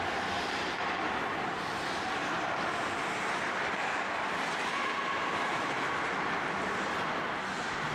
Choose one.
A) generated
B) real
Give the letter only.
B